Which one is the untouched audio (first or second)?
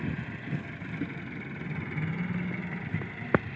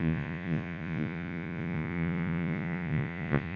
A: first